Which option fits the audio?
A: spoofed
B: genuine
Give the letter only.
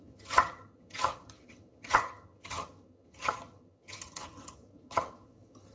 A